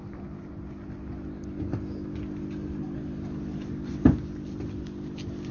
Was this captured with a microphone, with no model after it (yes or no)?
yes